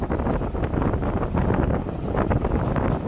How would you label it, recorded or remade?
recorded